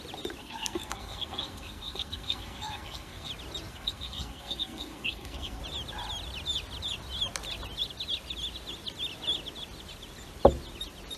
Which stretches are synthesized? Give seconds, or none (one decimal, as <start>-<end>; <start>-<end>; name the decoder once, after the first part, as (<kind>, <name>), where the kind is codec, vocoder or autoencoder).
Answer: 0.4-3.3 (codec, SNAC); 3.7-5.6